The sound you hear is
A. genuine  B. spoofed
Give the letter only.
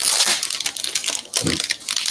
A